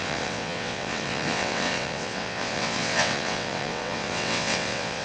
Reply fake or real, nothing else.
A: fake